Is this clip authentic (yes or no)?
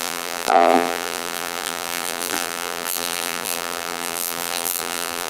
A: no